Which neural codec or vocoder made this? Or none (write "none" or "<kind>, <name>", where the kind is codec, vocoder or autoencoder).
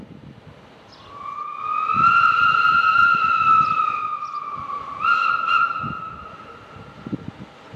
none